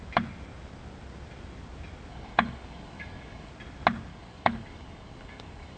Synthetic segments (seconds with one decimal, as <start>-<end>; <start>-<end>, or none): 2.1-3.5; 4.1-5.8